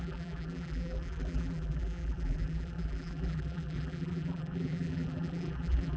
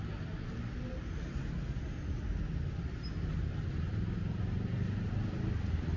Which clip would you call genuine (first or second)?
second